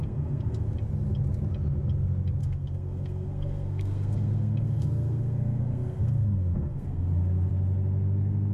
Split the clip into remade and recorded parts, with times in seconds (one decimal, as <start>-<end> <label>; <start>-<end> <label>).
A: 0.0-0.7 remade; 0.7-2.4 recorded; 2.4-7.5 remade; 7.5-8.5 recorded